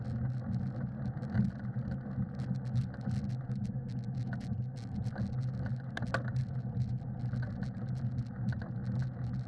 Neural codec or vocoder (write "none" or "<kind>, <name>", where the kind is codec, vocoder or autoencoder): none